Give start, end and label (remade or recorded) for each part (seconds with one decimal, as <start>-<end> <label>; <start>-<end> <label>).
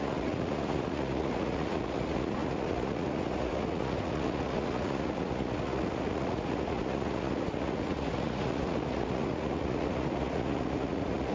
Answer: 0.0-11.3 remade